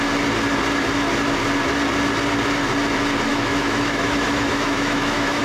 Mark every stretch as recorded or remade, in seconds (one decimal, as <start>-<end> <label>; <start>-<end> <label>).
0.0-3.3 recorded; 3.3-5.4 remade

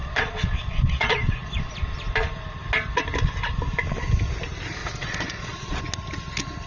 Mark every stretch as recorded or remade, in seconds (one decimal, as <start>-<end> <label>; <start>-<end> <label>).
0.0-1.7 remade; 1.7-4.8 recorded; 4.8-5.8 remade; 5.8-6.7 recorded